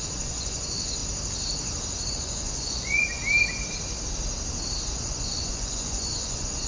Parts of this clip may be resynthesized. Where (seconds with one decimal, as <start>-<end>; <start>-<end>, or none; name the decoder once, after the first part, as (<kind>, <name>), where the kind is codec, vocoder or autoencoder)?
0.0-1.0 (vocoder, Vocos); 2.1-3.2; 4.9-6.7